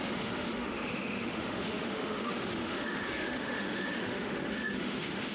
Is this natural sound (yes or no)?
no